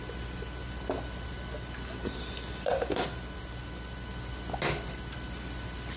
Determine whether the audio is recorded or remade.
recorded